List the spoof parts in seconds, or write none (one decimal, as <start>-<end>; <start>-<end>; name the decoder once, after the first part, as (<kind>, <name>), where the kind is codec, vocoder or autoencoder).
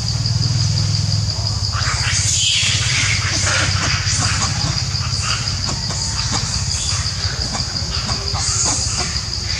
2.6-3.1 (vocoder, BigVGAN v2)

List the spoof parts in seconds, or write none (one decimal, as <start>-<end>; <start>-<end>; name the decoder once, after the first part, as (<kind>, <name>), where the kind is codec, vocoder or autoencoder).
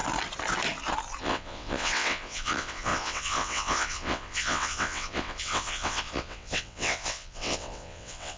1.2-8.4 (vocoder, WaveNeXt)